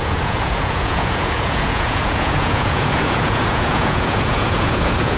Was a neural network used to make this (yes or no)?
yes